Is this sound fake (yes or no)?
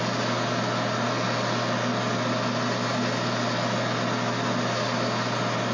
no